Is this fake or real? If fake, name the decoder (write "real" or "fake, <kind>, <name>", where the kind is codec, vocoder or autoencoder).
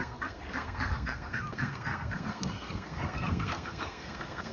fake, codec, SNAC